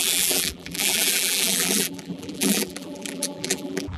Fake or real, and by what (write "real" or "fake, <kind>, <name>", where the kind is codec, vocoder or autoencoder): fake, vocoder, BigVGAN v2